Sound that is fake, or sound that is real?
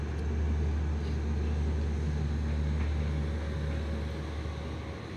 real